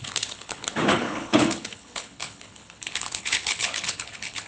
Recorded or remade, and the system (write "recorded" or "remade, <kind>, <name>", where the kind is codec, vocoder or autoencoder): remade, codec, HILCodec